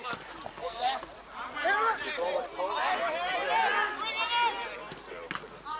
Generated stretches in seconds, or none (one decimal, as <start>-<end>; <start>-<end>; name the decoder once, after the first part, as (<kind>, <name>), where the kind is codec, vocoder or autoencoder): 0.5-1.0 (codec, SNAC)